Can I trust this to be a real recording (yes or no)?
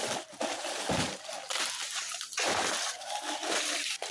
yes